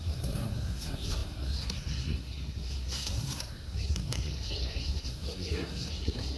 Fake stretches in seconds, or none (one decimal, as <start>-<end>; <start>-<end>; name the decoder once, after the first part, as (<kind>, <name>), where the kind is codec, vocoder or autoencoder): 0.0-6.4 (codec, SNAC)